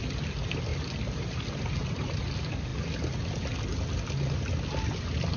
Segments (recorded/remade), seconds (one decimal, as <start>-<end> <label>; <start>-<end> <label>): 0.0-5.4 recorded